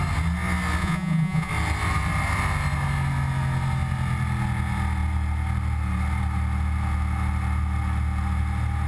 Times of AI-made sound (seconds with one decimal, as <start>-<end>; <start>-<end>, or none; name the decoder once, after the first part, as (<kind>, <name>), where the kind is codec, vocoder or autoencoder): 0.8-1.5 (vocoder, Vocos)